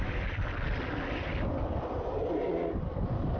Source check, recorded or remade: recorded